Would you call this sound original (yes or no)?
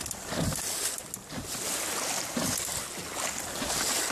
yes